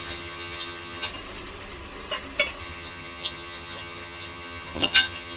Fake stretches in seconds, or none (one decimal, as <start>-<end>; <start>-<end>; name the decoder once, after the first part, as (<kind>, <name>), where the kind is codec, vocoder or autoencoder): 0.0-1.1 (vocoder, HiFi-GAN); 2.6-5.4